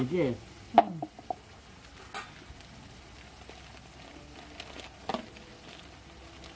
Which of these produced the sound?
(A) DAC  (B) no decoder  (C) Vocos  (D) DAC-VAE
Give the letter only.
B